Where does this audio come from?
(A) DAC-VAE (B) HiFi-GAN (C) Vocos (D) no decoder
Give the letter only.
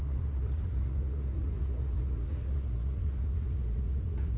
C